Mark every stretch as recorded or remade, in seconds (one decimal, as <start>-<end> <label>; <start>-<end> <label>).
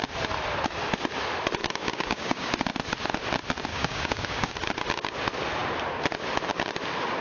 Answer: 0.0-1.6 recorded; 1.6-2.5 remade; 2.5-3.7 recorded; 3.7-4.5 remade; 4.5-7.2 recorded